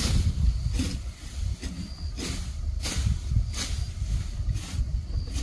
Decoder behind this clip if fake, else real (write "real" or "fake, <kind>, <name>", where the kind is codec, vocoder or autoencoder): real